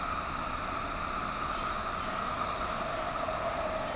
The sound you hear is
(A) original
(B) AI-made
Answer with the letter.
A